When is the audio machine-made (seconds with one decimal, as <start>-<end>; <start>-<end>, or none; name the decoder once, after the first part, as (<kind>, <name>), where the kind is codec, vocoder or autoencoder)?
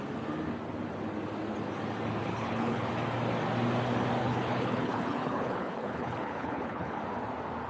2.2-2.9 (codec, HILCodec); 4.2-7.0